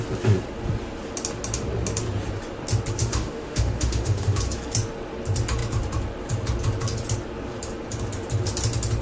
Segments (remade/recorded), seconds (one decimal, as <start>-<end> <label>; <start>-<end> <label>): 0.0-3.0 recorded; 3.0-4.4 remade; 4.4-9.0 recorded